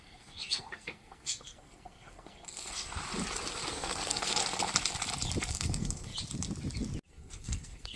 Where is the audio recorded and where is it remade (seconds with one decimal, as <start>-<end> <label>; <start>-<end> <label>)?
0.0-3.0 remade; 3.0-3.7 recorded; 3.7-4.4 remade; 4.4-5.5 recorded; 5.5-6.1 remade; 6.1-7.1 recorded; 7.1-8.0 remade